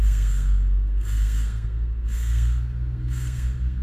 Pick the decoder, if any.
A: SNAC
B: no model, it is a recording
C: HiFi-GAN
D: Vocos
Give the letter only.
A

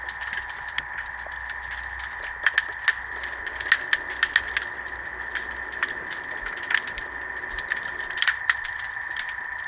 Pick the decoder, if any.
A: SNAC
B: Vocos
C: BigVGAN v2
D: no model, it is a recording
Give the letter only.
D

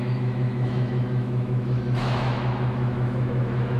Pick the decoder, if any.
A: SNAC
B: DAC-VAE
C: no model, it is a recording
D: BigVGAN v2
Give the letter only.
B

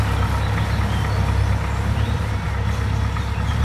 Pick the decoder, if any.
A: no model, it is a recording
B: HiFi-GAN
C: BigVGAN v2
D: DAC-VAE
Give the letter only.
A